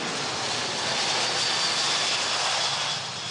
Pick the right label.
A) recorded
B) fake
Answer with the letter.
A